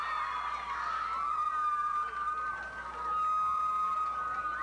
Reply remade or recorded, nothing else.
recorded